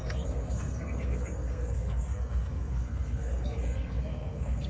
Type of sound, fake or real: fake